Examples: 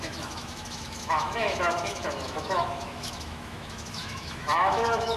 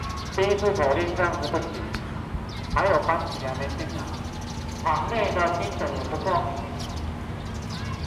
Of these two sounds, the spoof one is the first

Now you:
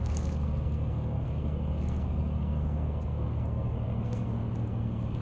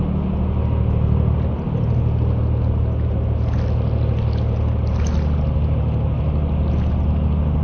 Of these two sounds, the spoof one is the first